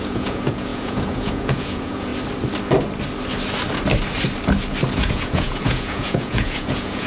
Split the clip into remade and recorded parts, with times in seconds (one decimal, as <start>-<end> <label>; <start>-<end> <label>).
0.0-2.1 remade; 2.1-4.9 recorded; 4.9-7.1 remade